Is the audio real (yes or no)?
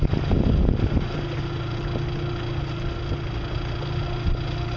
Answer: yes